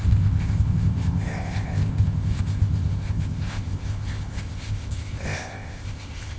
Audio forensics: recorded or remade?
remade